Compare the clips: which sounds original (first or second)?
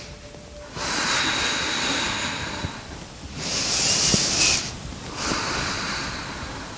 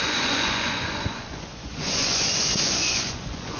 first